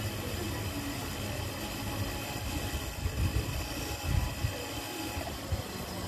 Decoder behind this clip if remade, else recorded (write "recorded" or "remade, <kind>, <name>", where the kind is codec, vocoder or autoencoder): recorded